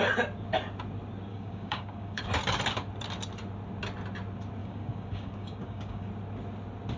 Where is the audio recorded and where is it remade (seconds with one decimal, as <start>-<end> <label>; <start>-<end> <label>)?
0.0-1.3 recorded; 1.3-2.2 remade; 2.2-4.6 recorded; 4.6-6.1 remade; 6.1-7.0 recorded